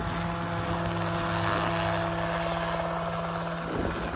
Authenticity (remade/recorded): recorded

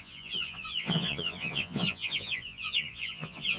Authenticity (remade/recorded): remade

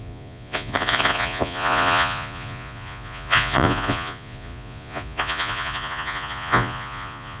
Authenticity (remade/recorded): remade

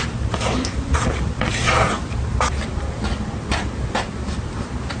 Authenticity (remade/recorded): recorded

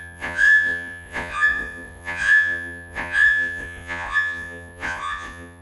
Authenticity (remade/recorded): remade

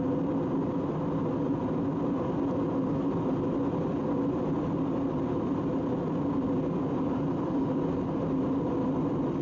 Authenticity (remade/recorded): recorded